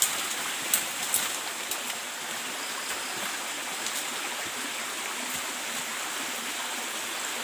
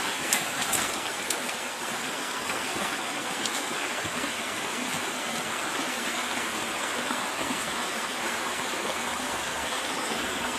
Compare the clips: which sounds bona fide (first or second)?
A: first